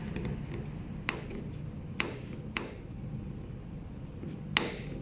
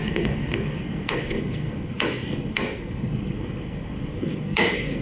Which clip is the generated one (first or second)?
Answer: second